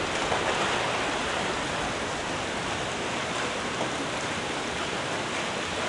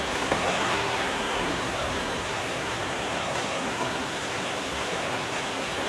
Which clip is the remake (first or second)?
second